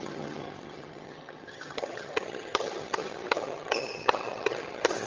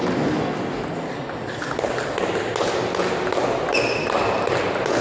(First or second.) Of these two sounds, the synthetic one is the first